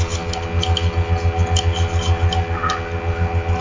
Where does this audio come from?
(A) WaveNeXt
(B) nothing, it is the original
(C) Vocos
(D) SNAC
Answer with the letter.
B